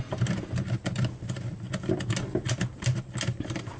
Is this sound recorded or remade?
recorded